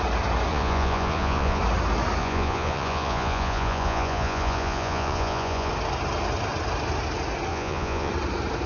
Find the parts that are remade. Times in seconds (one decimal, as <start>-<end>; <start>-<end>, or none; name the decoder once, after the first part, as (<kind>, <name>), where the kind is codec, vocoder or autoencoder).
0.5-1.6 (vocoder, Vocos); 2.2-5.7; 7.5-8.1